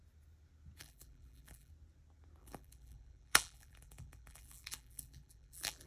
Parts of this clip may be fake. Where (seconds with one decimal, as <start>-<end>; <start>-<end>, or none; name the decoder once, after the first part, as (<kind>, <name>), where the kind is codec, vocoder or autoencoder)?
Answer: 0.8-1.7 (vocoder, BigVGAN v2); 2.4-5.9